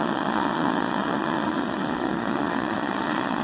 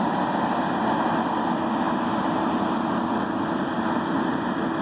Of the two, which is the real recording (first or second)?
second